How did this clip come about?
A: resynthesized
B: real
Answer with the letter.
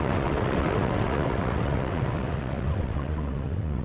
A